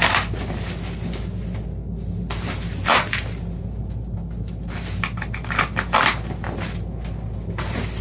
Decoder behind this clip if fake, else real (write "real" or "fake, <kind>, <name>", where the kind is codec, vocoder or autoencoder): real